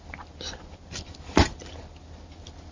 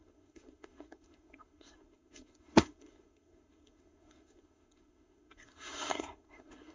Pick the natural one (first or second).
first